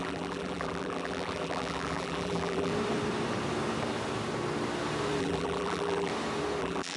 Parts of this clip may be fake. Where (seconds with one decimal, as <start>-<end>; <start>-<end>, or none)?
0.0-2.7; 5.2-6.1; 6.6-7.0